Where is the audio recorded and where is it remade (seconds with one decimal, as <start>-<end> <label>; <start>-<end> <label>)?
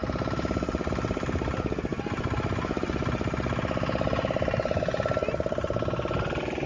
0.0-6.7 recorded